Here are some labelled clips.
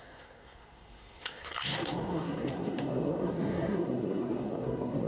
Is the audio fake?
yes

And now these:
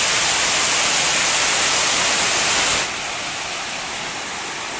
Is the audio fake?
no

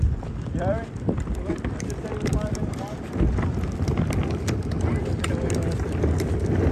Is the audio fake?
no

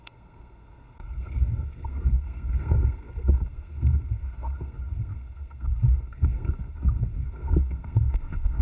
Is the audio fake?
yes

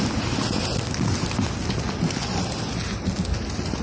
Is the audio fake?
no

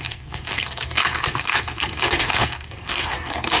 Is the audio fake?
yes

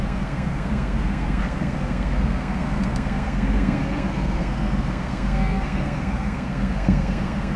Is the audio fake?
yes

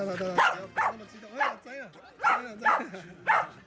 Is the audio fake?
no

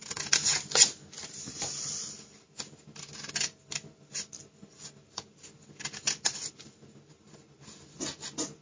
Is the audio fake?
no